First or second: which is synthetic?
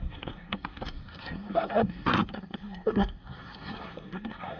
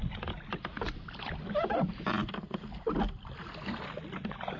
first